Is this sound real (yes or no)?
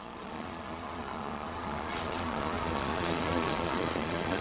no